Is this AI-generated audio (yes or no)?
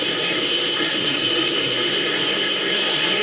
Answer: yes